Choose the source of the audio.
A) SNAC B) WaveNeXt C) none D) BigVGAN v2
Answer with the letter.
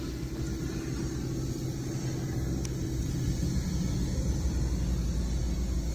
C